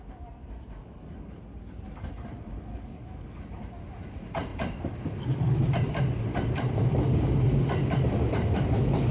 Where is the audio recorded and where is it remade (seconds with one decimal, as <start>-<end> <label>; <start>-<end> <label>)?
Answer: 0.0-0.8 recorded; 0.8-1.3 remade; 1.3-2.7 recorded; 2.7-3.4 remade; 3.4-9.1 recorded